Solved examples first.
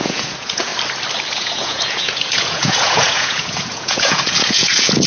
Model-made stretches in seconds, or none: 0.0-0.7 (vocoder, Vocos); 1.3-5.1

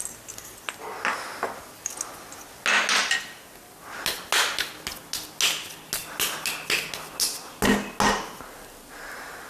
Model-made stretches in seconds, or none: none

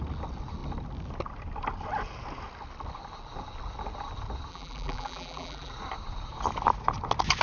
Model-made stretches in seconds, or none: 4.5-5.7 (vocoder, BigVGAN v2)

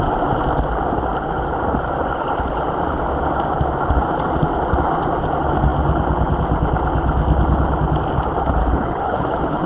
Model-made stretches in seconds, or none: 8.6-9.7 (codec, HILCodec)